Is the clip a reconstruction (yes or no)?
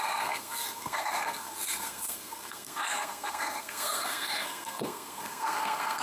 yes